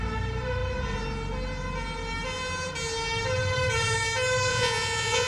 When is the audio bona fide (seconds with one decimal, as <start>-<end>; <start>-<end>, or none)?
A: 0.0-4.5